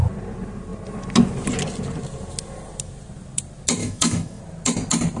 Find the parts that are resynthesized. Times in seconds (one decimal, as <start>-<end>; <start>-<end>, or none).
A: 3.8-4.4